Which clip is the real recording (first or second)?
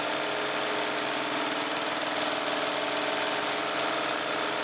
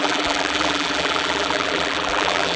first